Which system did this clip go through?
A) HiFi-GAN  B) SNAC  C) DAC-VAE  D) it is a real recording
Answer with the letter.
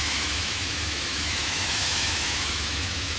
C